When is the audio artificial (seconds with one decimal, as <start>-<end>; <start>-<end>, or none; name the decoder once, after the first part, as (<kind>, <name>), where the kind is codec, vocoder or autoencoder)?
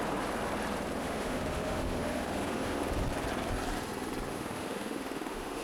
1.0-2.8 (autoencoder, DAC-VAE); 4.3-5.6